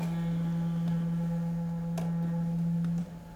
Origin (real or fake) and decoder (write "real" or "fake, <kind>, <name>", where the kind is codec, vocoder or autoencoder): real